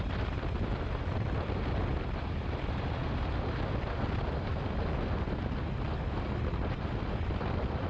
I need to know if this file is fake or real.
real